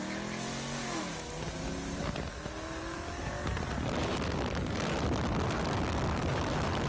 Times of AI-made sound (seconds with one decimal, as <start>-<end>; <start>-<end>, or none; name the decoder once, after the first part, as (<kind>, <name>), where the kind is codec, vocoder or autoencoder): 0.8-1.3 (autoencoder, DAC-VAE)